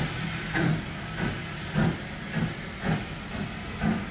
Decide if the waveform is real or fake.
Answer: real